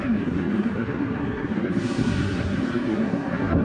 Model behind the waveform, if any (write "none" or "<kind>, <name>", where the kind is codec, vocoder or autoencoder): codec, SNAC